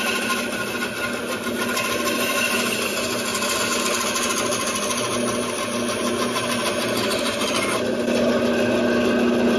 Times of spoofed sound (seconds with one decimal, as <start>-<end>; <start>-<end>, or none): none